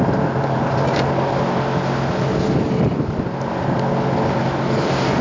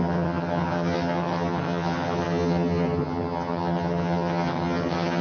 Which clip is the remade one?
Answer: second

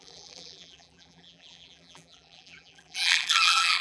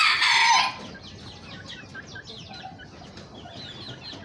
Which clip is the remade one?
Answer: first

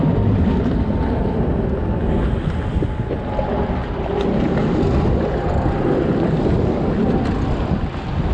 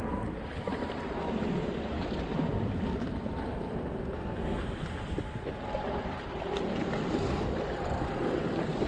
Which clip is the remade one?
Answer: second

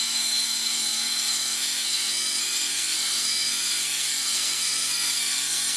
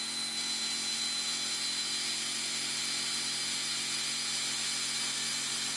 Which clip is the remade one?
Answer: first